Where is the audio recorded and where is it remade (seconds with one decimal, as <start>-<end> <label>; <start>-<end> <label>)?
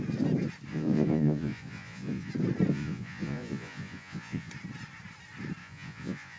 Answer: 0.0-0.7 recorded; 0.7-2.3 remade; 2.3-2.7 recorded; 2.7-4.5 remade; 4.5-5.6 recorded; 5.6-6.4 remade